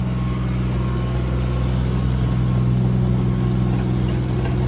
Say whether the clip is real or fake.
real